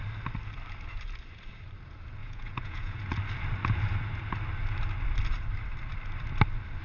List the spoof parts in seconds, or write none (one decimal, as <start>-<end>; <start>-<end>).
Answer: 2.2-3.0

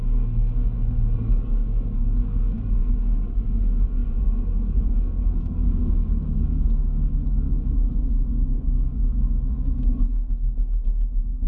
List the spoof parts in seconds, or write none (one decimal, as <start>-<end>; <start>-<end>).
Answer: 0.0-11.5

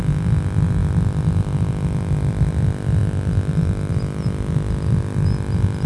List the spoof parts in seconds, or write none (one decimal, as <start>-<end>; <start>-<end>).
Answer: none

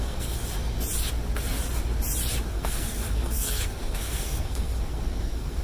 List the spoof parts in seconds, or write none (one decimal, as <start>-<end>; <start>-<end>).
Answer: 0.0-0.4; 2.5-5.6